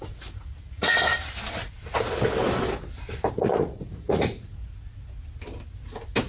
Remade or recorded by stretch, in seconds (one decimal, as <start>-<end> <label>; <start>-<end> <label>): 0.0-1.1 remade; 1.1-3.3 recorded; 3.3-4.6 remade; 4.6-6.3 recorded